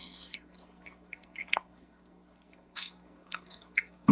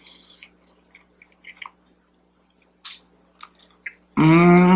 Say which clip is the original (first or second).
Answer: second